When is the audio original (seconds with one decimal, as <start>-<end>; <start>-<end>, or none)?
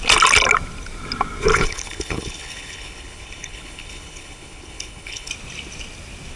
0.0-1.5; 5.3-6.4